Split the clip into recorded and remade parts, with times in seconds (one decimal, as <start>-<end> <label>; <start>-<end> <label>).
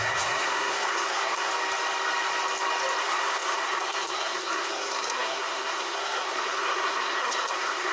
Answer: 0.0-1.5 remade; 1.5-3.0 recorded; 3.0-7.9 remade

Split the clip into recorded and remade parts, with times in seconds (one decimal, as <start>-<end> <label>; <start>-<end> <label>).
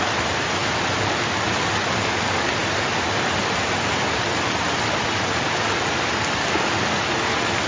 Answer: 0.0-7.7 recorded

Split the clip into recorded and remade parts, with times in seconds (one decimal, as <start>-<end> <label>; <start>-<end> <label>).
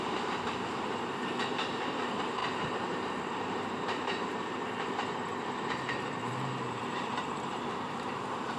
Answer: 0.0-8.6 remade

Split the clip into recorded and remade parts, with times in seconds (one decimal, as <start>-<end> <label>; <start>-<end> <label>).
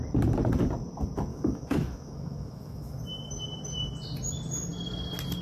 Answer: 0.0-1.3 recorded; 1.3-3.0 remade; 3.0-5.4 recorded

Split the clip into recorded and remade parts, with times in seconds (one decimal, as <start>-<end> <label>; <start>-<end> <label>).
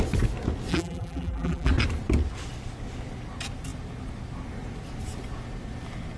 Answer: 0.0-0.7 recorded; 0.7-1.7 remade; 1.7-6.2 recorded